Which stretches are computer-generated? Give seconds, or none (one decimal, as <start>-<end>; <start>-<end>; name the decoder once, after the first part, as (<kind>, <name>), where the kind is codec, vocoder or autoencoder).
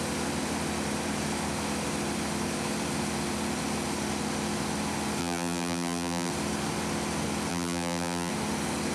5.2-6.3 (vocoder, BigVGAN v2); 7.5-8.3